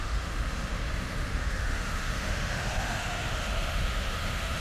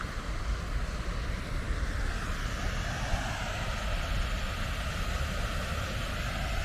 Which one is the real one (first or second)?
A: second